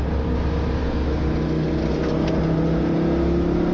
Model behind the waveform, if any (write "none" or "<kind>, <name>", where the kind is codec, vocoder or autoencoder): none